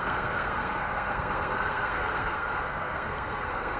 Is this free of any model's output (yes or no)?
no